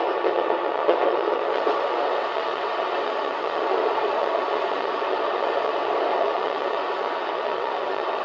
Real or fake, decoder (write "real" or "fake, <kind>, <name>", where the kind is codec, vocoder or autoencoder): fake, vocoder, WaveNeXt